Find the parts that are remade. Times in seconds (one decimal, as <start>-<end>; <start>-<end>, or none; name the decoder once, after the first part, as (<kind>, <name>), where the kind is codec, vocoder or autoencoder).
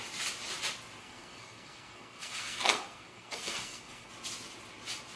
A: 1.0-4.1 (codec, SNAC)